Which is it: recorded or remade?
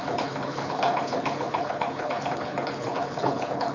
remade